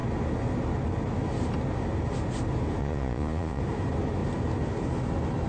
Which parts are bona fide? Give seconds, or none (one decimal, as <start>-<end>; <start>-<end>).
0.0-2.8; 3.6-5.5